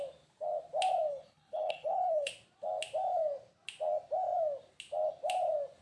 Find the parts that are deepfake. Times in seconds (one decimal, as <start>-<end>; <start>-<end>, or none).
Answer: 1.1-2.3